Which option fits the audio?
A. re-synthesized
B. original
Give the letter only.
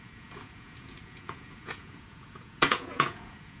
A